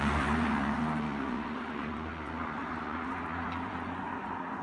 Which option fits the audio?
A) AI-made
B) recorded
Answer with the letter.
A